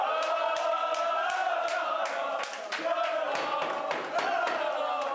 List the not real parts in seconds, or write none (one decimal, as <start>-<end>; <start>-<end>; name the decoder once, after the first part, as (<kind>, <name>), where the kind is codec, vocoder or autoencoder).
none